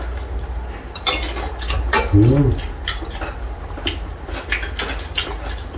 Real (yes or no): yes